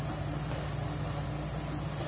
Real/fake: real